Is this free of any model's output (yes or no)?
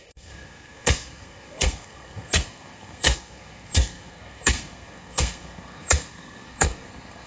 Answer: no